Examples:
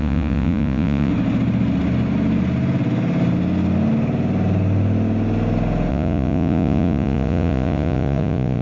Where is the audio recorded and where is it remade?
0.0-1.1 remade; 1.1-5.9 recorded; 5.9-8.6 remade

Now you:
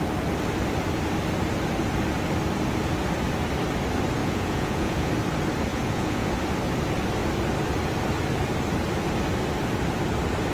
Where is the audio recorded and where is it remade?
0.0-4.2 recorded; 4.2-5.1 remade; 5.1-5.7 recorded; 5.7-6.3 remade; 6.3-10.5 recorded

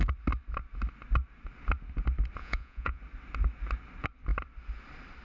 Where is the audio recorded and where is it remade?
0.0-2.4 recorded; 2.4-3.0 remade; 3.0-5.2 recorded